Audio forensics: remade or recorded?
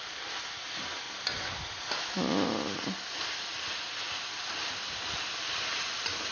recorded